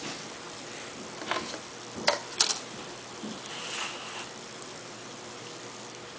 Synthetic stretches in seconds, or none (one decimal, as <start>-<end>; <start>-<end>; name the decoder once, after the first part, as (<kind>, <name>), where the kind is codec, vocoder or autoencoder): none